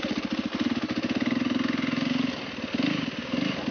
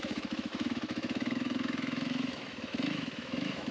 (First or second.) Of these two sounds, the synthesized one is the second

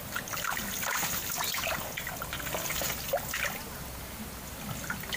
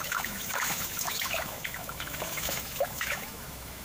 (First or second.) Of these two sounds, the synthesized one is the second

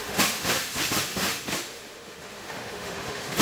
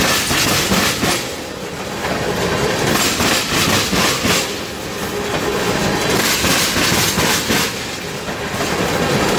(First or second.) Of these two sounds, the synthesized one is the first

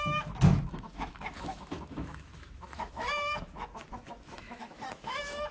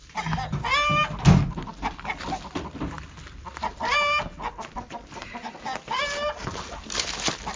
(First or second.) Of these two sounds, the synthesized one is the first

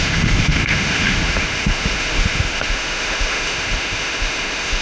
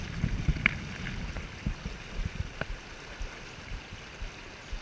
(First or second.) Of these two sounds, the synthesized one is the first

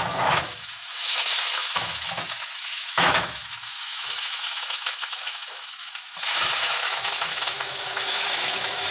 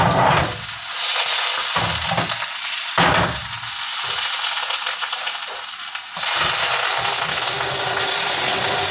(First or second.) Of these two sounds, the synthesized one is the first